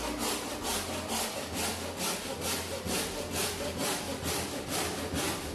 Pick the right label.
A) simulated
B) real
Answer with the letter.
B